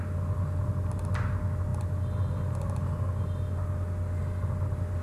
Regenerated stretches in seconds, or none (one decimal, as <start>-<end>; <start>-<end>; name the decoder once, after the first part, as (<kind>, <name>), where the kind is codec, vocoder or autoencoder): none